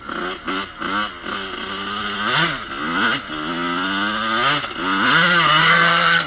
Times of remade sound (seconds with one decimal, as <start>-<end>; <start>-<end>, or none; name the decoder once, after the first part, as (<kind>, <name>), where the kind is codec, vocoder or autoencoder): 5.6-6.3 (codec, SNAC)